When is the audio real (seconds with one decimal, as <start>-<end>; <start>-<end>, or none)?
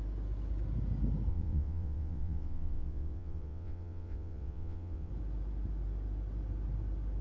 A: 0.0-1.3; 5.1-7.2